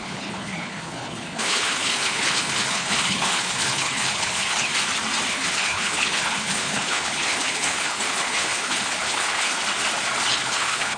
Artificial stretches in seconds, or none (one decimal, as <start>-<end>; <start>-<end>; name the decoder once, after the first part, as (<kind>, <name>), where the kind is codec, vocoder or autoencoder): 0.0-4.7 (codec, HILCodec); 5.3-9.5; 10.3-11.0